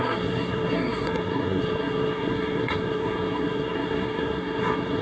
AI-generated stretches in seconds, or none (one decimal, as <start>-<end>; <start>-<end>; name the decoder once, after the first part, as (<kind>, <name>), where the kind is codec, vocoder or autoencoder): 0.0-5.0 (codec, SNAC)